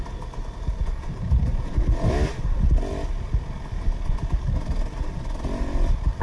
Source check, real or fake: real